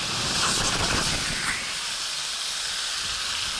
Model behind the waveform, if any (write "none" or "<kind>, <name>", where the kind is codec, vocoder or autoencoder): none